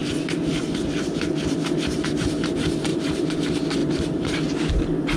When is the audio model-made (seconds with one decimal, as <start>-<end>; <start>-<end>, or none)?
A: 0.0-2.5; 2.9-3.4; 3.8-4.4